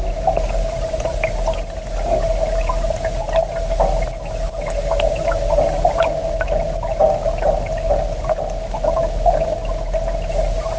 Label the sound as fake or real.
real